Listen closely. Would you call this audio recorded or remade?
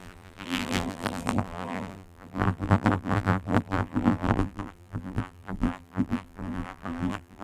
remade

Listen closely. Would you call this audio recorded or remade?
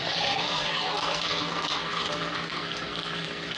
remade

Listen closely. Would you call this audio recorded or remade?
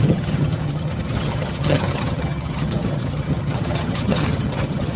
remade